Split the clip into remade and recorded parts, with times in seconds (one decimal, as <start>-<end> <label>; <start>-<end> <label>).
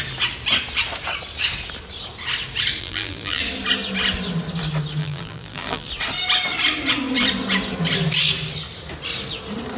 0.0-2.8 recorded; 2.8-3.4 remade; 3.4-5.0 recorded; 5.0-5.9 remade; 5.9-9.8 recorded